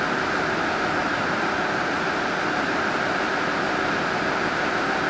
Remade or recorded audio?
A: recorded